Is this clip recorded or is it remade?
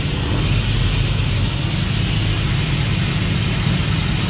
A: recorded